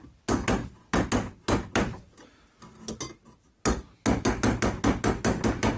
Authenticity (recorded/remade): recorded